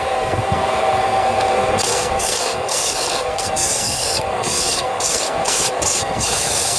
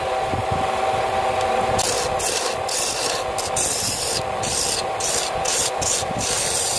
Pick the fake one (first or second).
first